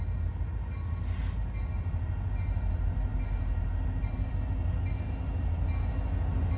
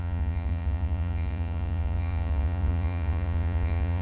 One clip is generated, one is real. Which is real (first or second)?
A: first